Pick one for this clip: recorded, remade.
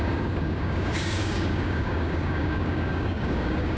remade